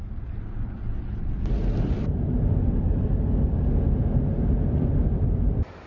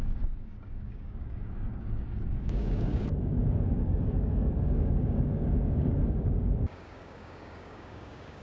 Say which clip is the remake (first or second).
second